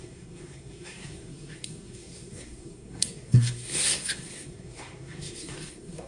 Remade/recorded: remade